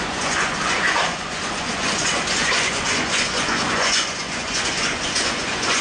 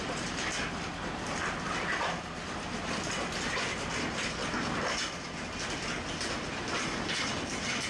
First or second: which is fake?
first